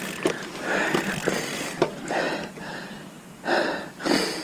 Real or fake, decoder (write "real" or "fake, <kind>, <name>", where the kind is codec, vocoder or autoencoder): real